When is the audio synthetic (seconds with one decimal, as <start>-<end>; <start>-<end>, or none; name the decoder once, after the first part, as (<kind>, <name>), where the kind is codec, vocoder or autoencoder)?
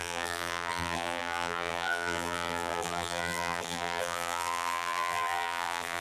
0.0-6.0 (vocoder, BigVGAN v2)